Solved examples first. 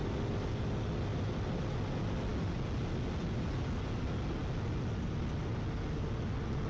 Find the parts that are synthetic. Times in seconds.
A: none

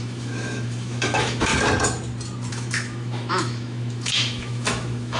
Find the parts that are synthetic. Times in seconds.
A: 0.0-1.5 (autoencoder, DAC-VAE); 2.5-5.2

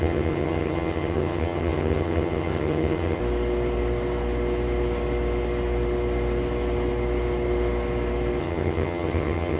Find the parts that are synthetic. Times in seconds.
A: 0.0-3.2 (vocoder, HiFi-GAN); 8.4-9.6

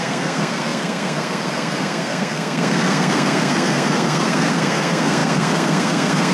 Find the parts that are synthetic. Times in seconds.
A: 0.0-6.3 (codec, SNAC)

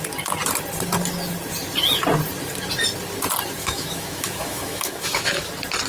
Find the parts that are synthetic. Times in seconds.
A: 3.6-5.5 (autoencoder, DAC-VAE)

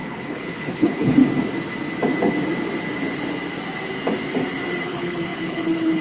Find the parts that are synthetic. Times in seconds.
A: 0.0-1.2 (codec, HILCodec); 4.8-6.0

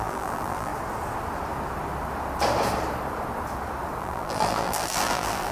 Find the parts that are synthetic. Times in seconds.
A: 0.0-0.7 (vocoder, BigVGAN v2); 4.0-5.5